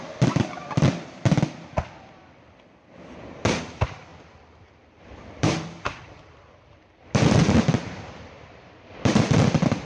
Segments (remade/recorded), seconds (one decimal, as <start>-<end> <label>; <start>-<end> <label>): 0.0-9.8 remade